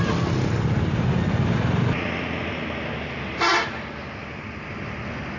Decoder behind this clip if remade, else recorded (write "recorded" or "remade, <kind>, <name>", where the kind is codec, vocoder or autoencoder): recorded